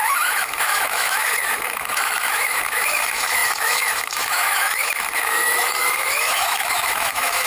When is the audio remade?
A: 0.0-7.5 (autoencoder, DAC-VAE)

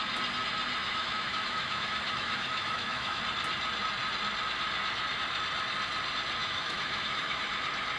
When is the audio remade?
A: 0.8-3.2 (autoencoder, DAC-VAE); 6.4-7.5

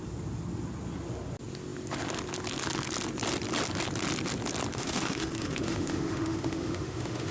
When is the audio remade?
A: 4.7-7.3 (autoencoder, DAC-VAE)

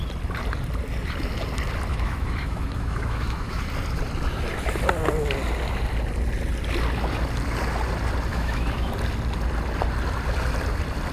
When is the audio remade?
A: 1.9-3.6 (autoencoder, DAC-VAE); 8.3-8.9

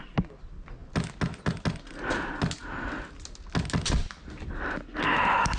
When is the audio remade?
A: none

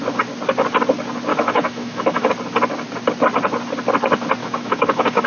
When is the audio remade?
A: 1.3-2.3 (autoencoder, DAC-VAE); 4.4-5.3

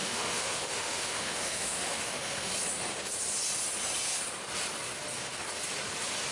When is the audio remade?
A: 0.0-2.5 (autoencoder, DAC-VAE)

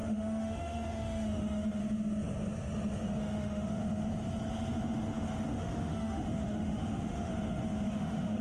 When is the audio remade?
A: 0.0-1.8 (autoencoder, DAC-VAE); 3.2-3.8; 5.5-7.3; 7.9-8.4